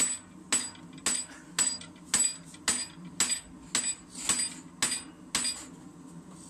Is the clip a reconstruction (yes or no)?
no